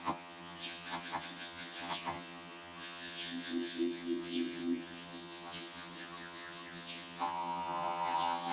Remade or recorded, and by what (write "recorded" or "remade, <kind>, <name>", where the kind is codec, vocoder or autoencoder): remade, vocoder, HiFi-GAN